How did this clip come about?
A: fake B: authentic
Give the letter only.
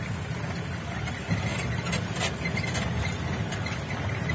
B